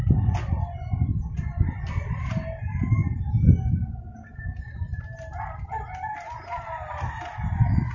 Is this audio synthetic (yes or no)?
no